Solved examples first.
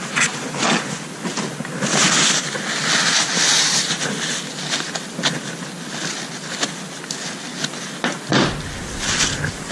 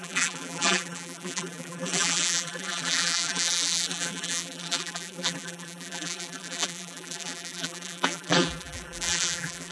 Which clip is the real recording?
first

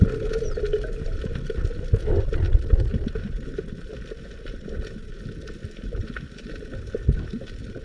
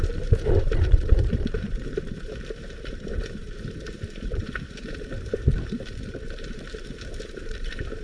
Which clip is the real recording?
first